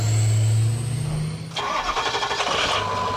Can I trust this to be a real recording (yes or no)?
yes